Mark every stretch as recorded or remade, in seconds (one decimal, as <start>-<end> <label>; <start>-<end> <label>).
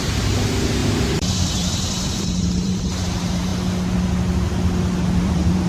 0.0-3.5 remade; 3.5-5.2 recorded; 5.2-5.7 remade